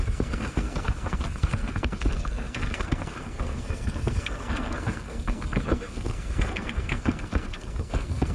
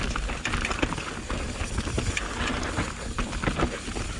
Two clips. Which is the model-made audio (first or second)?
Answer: first